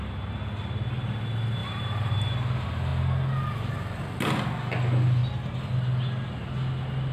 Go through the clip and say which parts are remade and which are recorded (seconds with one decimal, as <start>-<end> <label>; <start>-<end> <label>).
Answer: 0.0-1.6 recorded; 1.6-2.1 remade; 2.1-7.1 recorded